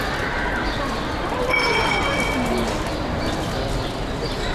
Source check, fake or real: real